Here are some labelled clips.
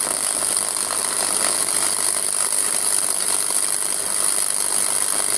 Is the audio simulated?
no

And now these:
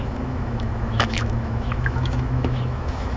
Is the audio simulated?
yes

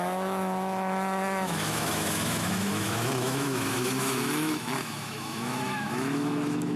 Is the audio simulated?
yes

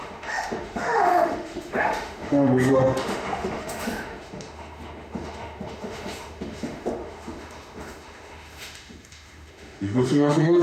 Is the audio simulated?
yes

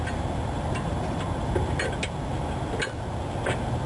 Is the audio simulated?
no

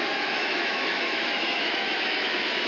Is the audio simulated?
yes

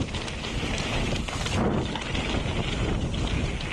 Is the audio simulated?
no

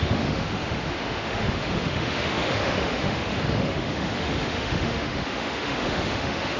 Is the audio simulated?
yes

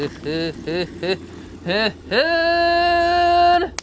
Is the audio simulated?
no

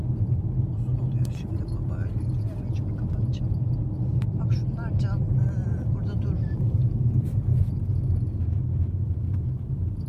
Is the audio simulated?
no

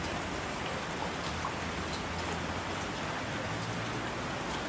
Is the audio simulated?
no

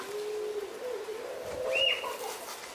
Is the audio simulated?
no